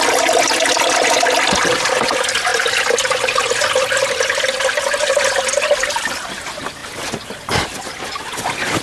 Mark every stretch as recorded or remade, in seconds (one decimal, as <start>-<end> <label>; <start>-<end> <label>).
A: 0.0-8.8 recorded